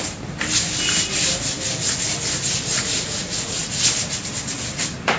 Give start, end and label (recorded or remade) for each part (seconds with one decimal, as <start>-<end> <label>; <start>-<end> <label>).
0.0-2.7 recorded; 2.7-3.7 remade; 3.7-5.2 recorded